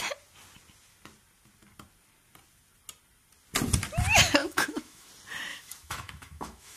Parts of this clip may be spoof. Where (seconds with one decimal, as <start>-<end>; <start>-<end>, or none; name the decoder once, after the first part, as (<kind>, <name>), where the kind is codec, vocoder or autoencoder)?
4.4-5.1 (autoencoder, DAC-VAE); 5.5-6.8